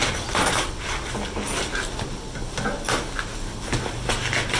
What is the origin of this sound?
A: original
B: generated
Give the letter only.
A